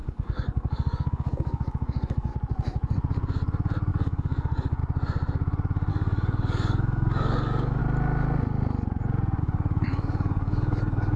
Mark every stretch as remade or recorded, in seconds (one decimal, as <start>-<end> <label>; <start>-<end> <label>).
0.0-2.3 remade; 2.3-3.9 recorded; 3.9-4.8 remade; 4.8-5.9 recorded; 5.9-7.8 remade; 7.8-9.4 recorded; 9.4-11.2 remade